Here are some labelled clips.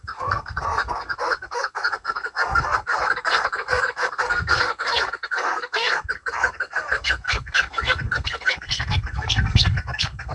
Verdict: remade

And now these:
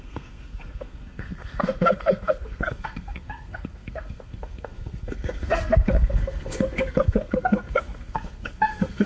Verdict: remade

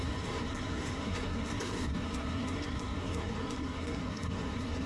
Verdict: remade